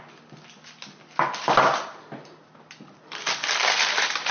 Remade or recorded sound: recorded